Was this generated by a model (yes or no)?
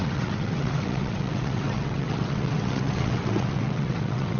yes